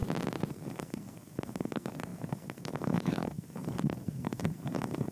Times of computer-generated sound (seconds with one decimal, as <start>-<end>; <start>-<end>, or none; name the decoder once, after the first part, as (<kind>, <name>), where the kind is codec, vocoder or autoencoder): 0.5-5.1 (codec, SNAC)